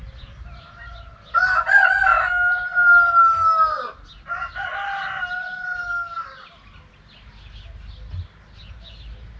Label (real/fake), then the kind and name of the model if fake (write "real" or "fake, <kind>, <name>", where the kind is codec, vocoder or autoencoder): real